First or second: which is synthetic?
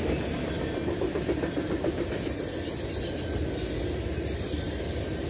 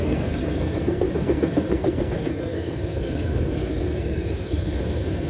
second